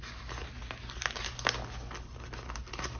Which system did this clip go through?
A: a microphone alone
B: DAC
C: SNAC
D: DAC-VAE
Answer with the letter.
A